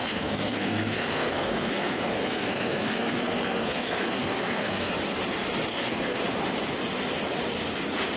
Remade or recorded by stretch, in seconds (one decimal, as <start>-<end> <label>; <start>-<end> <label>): 0.0-4.9 remade; 4.9-5.7 recorded; 5.7-6.2 remade; 6.2-8.2 recorded

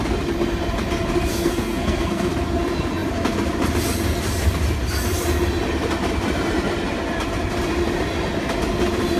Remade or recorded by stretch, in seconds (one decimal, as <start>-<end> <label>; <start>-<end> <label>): 0.0-1.3 recorded; 1.3-2.3 remade; 2.3-9.2 recorded

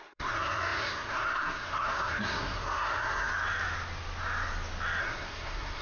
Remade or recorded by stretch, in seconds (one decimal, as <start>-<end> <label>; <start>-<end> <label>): 0.0-3.3 remade; 3.3-5.0 recorded; 5.0-5.8 remade

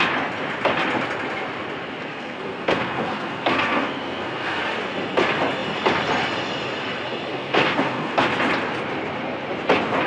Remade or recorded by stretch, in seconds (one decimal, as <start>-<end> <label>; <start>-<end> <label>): 0.0-2.1 recorded; 2.1-4.6 remade; 4.6-7.3 recorded; 7.3-8.3 remade; 8.3-10.1 recorded

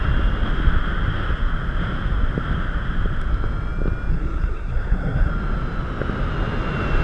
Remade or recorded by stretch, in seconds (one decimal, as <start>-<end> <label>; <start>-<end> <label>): 0.0-4.1 recorded; 4.1-5.3 remade; 5.3-7.0 recorded